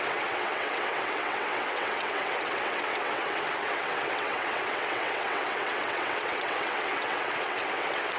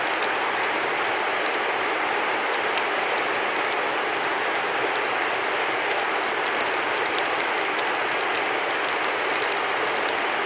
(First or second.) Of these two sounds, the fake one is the first